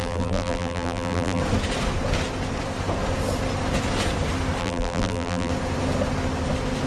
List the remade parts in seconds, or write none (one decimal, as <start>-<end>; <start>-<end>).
0.0-1.4; 4.6-5.5